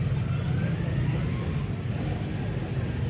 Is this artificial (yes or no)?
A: no